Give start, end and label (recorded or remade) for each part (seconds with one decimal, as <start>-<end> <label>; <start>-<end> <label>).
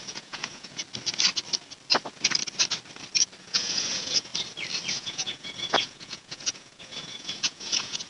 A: 0.0-0.8 remade; 0.8-3.4 recorded; 3.4-4.3 remade; 4.3-4.9 recorded; 4.9-8.1 remade